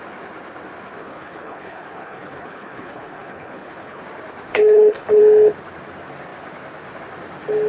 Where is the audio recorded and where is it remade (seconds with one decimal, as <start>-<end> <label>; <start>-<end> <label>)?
0.0-1.0 recorded; 1.0-4.0 remade; 4.0-4.5 recorded; 4.5-5.2 remade; 5.2-7.7 recorded